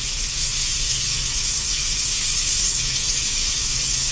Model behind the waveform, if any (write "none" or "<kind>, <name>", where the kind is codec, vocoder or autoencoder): autoencoder, DAC-VAE